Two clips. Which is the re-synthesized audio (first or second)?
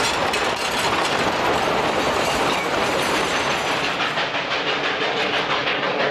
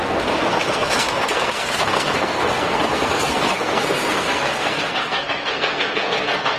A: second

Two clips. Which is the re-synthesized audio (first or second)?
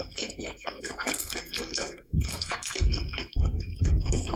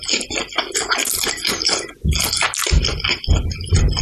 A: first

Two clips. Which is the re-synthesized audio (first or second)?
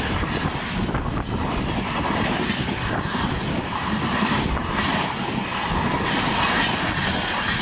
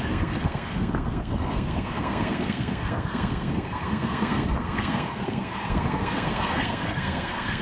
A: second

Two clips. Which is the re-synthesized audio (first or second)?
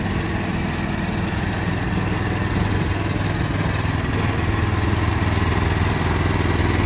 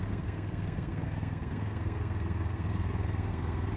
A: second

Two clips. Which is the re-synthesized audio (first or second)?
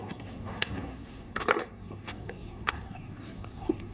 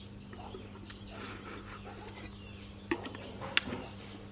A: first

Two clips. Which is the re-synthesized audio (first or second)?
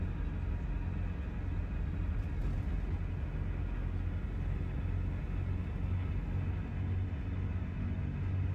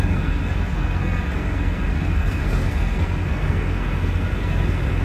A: second